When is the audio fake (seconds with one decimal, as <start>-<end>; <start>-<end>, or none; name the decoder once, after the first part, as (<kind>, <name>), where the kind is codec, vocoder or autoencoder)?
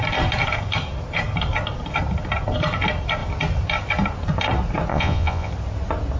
4.9-5.5 (vocoder, Vocos)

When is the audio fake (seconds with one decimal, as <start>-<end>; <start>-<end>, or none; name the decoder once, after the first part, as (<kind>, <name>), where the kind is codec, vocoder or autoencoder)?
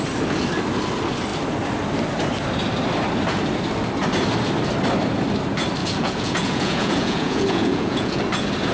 5.8-8.2 (vocoder, Vocos)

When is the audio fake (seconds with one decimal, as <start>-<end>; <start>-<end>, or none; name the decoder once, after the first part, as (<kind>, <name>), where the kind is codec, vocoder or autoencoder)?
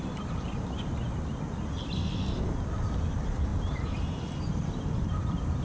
3.5-5.6 (vocoder, BigVGAN v2)